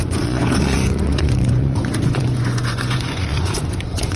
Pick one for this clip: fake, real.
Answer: fake